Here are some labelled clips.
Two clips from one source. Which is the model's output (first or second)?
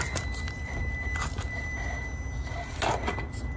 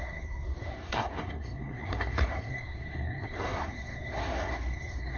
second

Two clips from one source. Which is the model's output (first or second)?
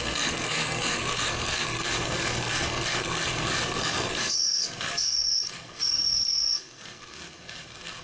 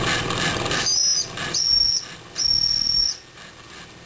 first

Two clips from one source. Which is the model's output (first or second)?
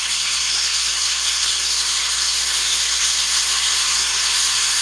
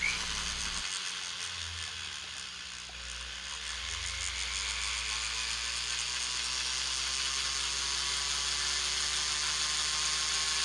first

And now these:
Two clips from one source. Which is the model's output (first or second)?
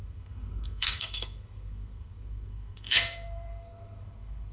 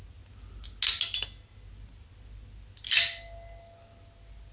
first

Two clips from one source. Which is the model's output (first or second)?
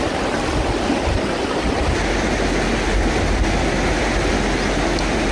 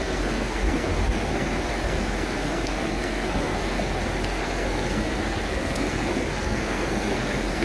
second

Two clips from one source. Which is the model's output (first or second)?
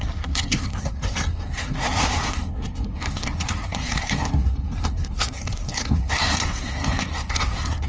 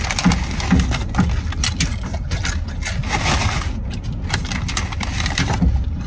first